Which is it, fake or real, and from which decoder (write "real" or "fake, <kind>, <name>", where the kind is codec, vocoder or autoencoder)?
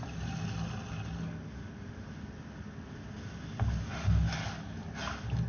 real